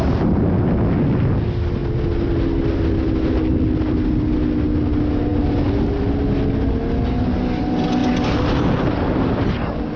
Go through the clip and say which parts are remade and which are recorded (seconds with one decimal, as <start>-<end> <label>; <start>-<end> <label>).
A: 0.0-10.0 recorded

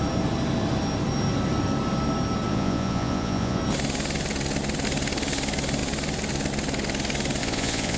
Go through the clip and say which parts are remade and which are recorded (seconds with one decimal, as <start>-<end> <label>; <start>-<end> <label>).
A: 0.0-2.5 recorded; 2.5-3.6 remade; 3.6-7.4 recorded; 7.4-8.0 remade

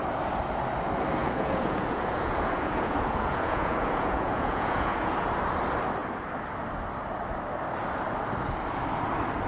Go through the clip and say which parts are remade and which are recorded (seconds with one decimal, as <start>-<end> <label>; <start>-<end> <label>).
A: 0.0-1.2 recorded; 1.2-5.3 remade; 5.3-9.5 recorded

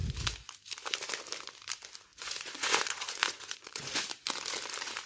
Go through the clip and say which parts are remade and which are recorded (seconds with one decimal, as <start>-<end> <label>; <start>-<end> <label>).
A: 0.0-2.1 recorded; 2.1-4.0 remade; 4.0-5.1 recorded

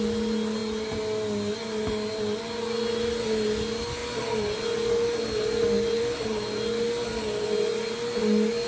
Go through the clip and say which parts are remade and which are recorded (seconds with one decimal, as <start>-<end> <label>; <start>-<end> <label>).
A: 0.0-8.7 recorded

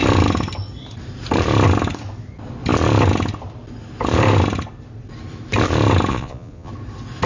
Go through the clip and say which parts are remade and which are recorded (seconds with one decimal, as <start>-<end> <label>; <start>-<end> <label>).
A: 0.0-6.1 recorded; 6.1-6.7 remade; 6.7-7.3 recorded

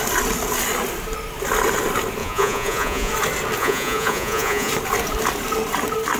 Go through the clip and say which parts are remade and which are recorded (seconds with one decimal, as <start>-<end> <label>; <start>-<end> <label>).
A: 0.0-2.2 recorded; 2.2-3.1 remade; 3.1-3.6 recorded; 3.6-4.7 remade; 4.7-6.2 recorded

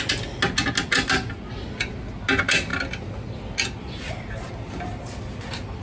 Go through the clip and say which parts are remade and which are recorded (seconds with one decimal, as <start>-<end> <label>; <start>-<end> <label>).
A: 0.0-5.8 recorded